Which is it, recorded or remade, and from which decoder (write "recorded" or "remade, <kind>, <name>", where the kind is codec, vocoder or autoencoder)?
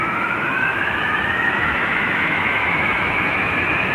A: remade, autoencoder, DAC-VAE